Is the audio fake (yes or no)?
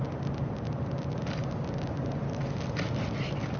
no